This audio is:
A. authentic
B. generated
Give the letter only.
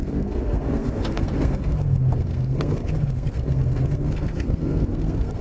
B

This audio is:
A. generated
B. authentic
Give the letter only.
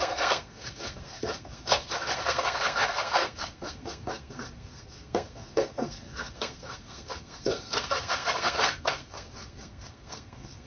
A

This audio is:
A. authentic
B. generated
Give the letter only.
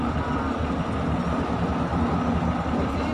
A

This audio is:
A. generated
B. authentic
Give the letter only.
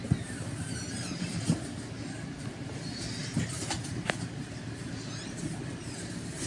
B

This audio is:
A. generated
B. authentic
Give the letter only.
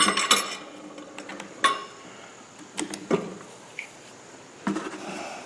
B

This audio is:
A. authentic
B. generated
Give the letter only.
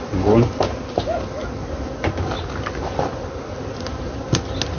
A